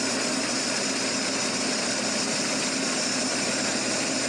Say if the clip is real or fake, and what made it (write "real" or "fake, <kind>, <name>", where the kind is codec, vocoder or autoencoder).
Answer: real